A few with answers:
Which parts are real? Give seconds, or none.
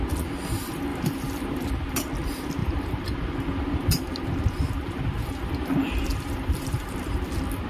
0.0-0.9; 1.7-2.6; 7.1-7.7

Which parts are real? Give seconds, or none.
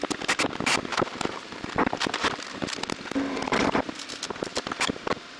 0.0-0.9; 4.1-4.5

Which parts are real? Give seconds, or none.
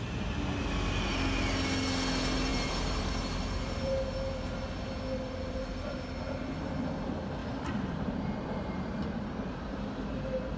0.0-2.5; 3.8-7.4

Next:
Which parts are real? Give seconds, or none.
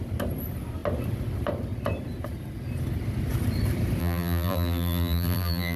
0.0-4.0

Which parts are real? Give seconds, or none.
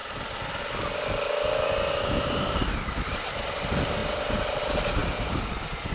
0.6-5.9